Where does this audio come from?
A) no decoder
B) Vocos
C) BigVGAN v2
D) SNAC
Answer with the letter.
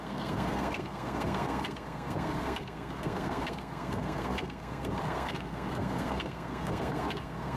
D